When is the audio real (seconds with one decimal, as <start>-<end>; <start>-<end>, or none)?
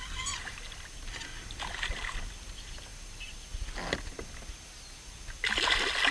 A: 0.0-6.1